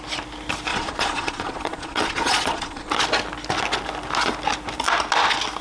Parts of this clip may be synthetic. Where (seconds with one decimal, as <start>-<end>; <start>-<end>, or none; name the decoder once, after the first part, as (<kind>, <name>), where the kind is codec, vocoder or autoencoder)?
0.7-2.9 (vocoder, Vocos)